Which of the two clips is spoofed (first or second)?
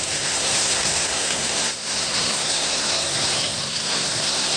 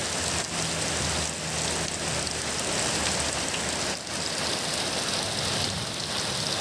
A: first